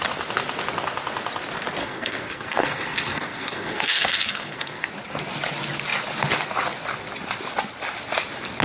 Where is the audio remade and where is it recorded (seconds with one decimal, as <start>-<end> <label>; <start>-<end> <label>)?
0.0-1.8 recorded; 1.8-4.9 remade; 4.9-8.6 recorded